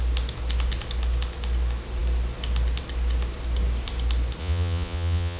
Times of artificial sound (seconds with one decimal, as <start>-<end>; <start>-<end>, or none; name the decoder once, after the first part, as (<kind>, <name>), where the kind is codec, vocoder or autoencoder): 4.4-5.4 (vocoder, Vocos)